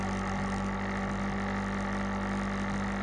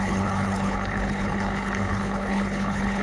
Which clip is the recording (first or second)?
first